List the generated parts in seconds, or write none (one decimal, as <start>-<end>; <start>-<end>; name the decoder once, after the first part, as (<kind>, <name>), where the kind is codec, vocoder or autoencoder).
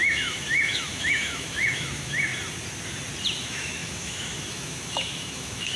0.0-2.3 (autoencoder, DAC-VAE); 3.4-5.8